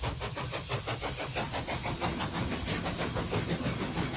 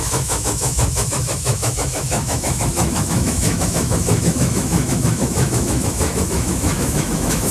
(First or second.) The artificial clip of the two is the second